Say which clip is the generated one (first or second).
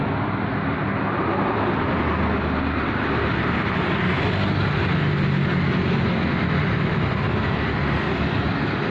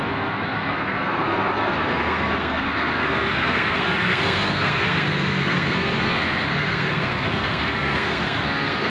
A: second